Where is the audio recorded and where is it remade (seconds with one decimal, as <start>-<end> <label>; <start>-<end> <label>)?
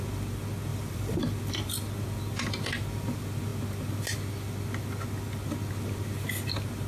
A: 0.0-0.7 recorded; 0.7-1.2 remade; 1.2-6.9 recorded